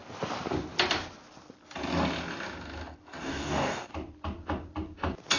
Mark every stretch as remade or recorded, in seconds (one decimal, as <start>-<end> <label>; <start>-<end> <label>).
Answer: 0.0-3.2 recorded; 3.2-3.9 remade; 3.9-5.4 recorded